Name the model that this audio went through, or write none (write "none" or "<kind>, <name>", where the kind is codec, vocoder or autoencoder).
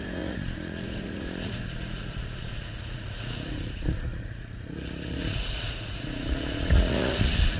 vocoder, Vocos